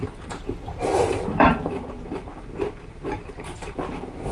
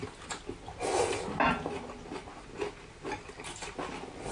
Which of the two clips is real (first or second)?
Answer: second